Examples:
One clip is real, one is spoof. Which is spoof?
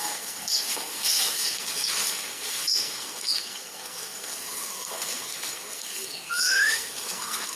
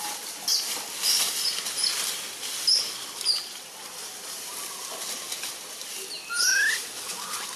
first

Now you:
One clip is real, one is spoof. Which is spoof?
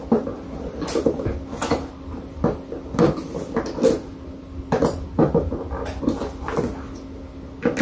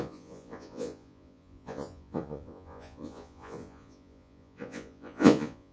second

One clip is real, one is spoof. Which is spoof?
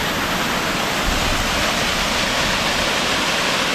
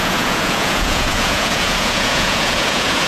second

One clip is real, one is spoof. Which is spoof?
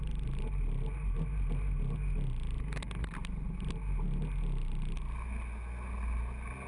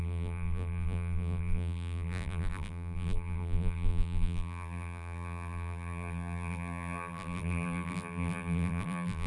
second